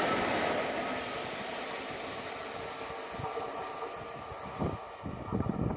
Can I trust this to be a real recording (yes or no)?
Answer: yes